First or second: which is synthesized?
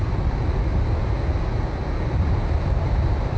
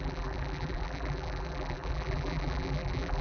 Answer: second